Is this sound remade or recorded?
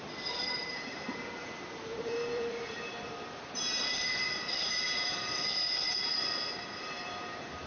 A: remade